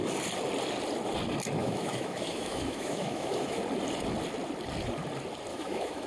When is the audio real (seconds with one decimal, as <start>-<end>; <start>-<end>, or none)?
0.0-1.6; 3.6-5.5